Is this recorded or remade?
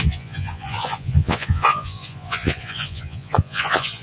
remade